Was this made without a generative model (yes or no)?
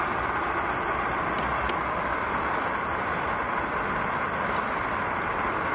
yes